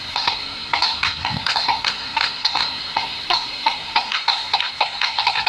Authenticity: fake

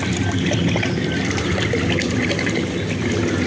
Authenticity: real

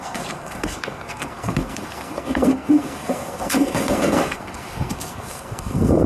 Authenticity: fake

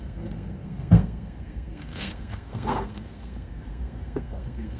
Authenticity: fake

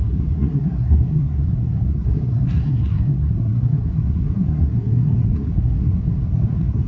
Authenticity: fake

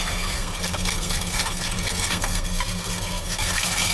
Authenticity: fake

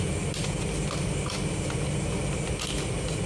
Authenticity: real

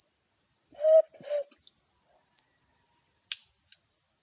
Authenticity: real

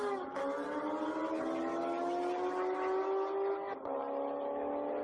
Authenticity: real